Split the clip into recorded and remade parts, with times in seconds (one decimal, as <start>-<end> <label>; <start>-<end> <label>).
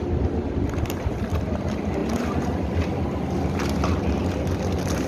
0.0-5.1 recorded